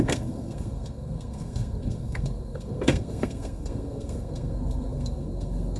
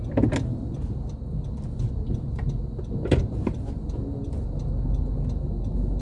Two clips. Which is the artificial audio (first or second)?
first